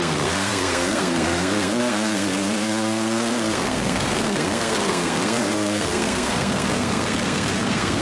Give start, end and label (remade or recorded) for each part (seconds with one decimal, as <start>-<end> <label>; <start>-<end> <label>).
0.0-8.0 remade